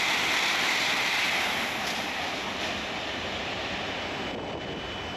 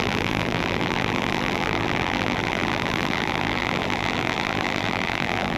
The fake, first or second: second